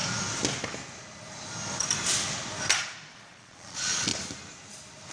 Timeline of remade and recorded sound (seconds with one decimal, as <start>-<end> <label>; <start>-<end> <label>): 0.0-3.1 recorded; 3.1-4.1 remade; 4.1-5.1 recorded